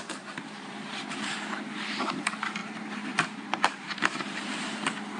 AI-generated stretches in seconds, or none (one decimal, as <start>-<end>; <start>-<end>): 0.0-5.2

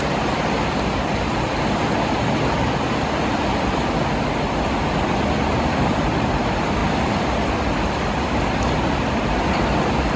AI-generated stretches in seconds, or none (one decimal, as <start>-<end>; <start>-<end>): none

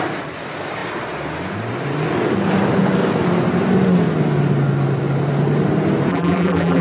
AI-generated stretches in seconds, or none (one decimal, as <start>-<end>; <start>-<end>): 6.1-6.8

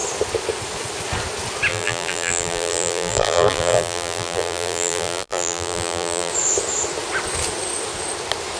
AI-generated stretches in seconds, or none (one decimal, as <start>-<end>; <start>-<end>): 1.7-6.3